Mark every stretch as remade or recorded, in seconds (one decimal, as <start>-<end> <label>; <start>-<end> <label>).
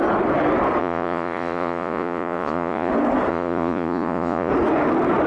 0.0-0.8 recorded; 0.8-2.9 remade; 2.9-3.3 recorded; 3.3-4.5 remade; 4.5-5.3 recorded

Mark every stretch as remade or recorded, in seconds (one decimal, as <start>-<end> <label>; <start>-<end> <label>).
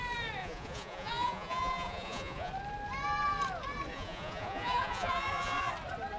0.0-0.4 recorded; 0.4-2.5 remade; 2.5-3.9 recorded; 3.9-5.7 remade; 5.7-6.2 recorded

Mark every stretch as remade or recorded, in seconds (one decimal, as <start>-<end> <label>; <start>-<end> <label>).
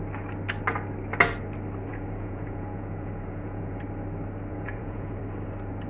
0.0-1.9 recorded; 1.9-3.8 remade; 3.8-4.5 recorded; 4.5-5.2 remade; 5.2-5.9 recorded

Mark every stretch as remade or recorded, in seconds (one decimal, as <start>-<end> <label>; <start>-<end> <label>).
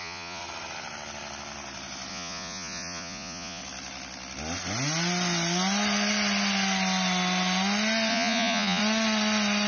0.0-0.4 remade; 0.4-2.1 recorded; 2.1-3.6 remade; 3.6-8.1 recorded; 8.1-8.8 remade; 8.8-9.7 recorded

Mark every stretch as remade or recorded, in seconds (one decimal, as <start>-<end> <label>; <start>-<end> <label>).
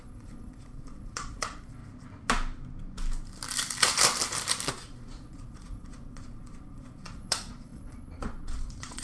0.0-1.8 remade; 1.8-4.7 recorded; 4.7-9.0 remade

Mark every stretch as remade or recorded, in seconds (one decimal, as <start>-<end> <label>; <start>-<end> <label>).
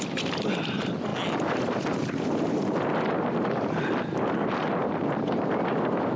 0.0-6.2 recorded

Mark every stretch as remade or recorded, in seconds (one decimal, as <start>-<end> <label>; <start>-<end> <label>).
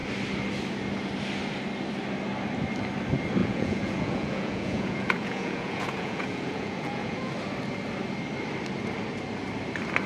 0.0-3.4 recorded; 3.4-7.3 remade; 7.3-10.1 recorded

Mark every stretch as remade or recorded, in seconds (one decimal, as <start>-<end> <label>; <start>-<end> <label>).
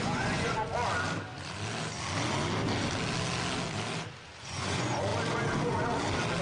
0.0-0.6 remade; 0.6-4.4 recorded; 4.4-5.1 remade; 5.1-6.4 recorded